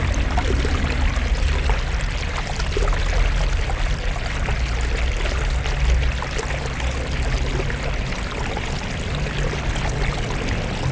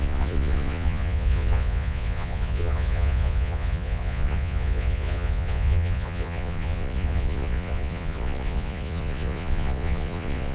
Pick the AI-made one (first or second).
second